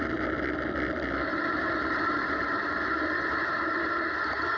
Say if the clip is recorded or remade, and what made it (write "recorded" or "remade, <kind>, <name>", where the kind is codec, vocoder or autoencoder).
recorded